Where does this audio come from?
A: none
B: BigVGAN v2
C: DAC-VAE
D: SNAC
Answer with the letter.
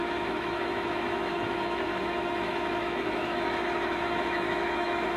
C